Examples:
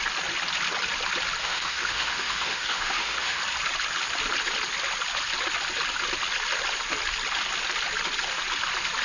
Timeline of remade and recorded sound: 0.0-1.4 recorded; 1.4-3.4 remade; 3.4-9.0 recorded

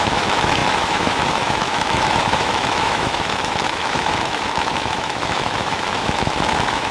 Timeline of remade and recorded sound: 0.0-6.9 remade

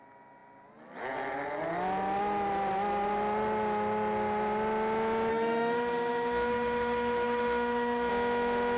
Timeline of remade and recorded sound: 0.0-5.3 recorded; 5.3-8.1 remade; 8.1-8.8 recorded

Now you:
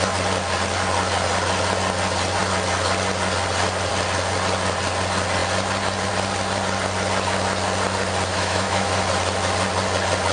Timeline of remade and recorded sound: 0.0-8.3 recorded; 8.3-9.0 remade; 9.0-10.3 recorded